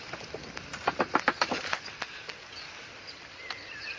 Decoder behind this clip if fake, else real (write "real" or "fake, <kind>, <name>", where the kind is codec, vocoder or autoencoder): real